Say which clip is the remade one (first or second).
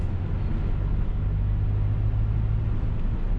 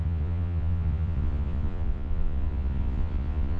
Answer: second